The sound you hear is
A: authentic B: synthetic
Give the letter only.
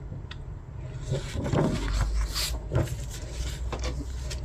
A